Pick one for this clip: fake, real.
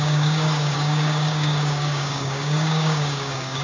fake